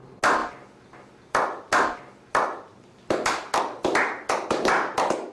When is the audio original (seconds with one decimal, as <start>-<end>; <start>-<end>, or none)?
0.0-5.3